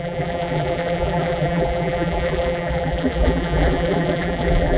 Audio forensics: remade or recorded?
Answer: remade